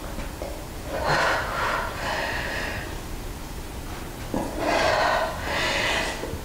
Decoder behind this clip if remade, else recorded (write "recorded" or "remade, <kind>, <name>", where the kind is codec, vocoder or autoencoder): recorded